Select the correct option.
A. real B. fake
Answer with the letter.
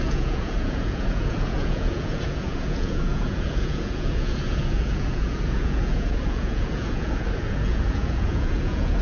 B